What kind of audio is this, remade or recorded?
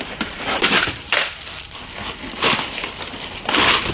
recorded